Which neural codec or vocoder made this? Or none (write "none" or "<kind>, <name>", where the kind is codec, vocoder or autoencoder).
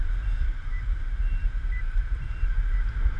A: vocoder, BigVGAN v2